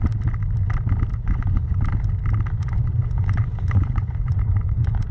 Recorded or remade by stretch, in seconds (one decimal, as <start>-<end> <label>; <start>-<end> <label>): 0.0-1.1 recorded; 1.1-1.8 remade; 1.8-2.6 recorded; 2.6-5.1 remade